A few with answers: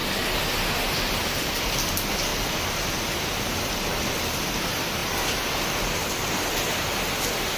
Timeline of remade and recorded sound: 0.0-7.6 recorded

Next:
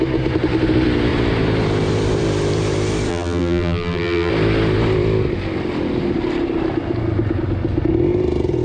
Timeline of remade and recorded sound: 0.0-3.1 recorded; 3.1-4.3 remade; 4.3-8.6 recorded

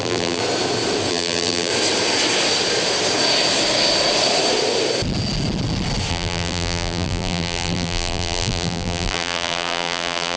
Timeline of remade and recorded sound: 0.0-0.4 remade; 0.4-1.1 recorded; 1.1-1.7 remade; 1.7-6.1 recorded; 6.1-10.4 remade